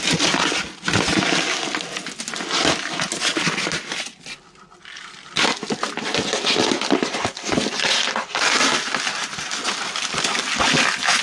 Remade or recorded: recorded